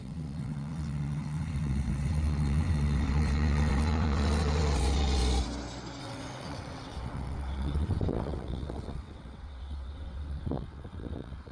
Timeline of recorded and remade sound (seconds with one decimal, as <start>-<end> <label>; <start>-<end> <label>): 0.0-5.2 remade; 5.2-6.0 recorded; 6.0-11.5 remade

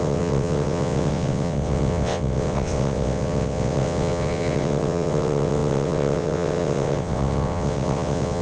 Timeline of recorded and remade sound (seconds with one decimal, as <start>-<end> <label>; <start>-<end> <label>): 0.0-8.4 remade

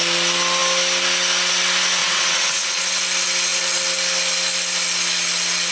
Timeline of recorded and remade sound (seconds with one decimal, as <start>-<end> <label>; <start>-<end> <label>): 0.0-2.0 recorded; 2.0-2.8 remade; 2.8-5.7 recorded

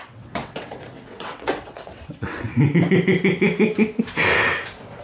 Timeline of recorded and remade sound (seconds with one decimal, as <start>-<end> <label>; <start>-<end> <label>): 0.0-2.5 remade; 2.5-5.0 recorded

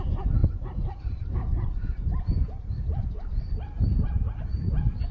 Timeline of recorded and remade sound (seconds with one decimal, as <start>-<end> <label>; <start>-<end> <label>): 0.0-5.1 recorded

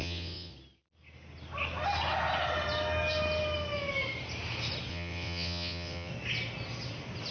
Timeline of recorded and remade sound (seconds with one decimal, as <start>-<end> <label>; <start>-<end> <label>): 0.0-0.5 remade; 0.5-4.9 recorded; 4.9-6.1 remade; 6.1-7.3 recorded